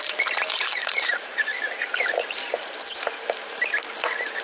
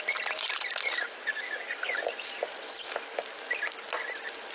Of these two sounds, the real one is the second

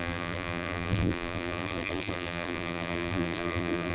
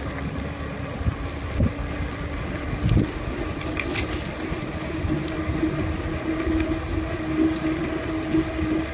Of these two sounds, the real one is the second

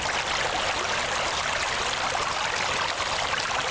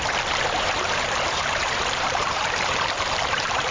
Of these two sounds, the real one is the first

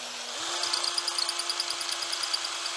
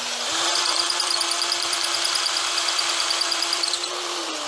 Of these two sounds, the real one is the first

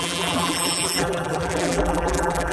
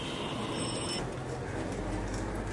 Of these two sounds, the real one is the second